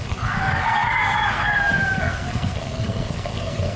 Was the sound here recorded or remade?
remade